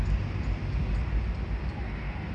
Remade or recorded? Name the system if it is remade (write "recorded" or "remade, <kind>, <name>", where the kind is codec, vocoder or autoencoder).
recorded